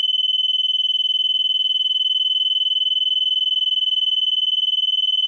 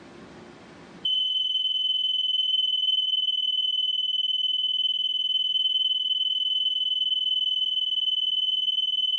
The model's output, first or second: second